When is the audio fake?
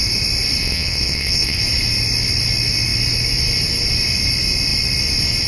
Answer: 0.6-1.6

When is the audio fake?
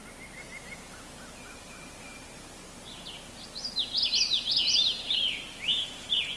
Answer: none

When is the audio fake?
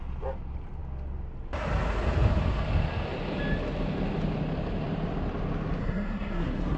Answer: 5.8-6.8